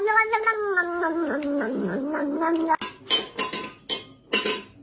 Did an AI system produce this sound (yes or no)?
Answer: no